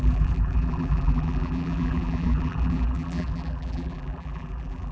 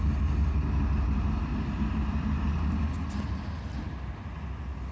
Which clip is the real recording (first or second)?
second